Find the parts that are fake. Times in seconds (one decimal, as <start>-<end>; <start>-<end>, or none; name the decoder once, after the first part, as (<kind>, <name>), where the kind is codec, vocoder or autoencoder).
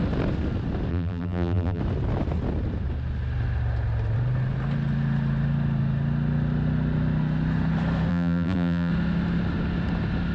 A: 0.9-1.8 (vocoder, BigVGAN v2); 8.1-8.9